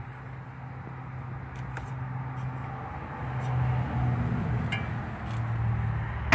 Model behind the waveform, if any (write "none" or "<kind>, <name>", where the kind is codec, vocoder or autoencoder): none